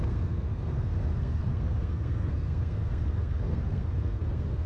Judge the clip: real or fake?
fake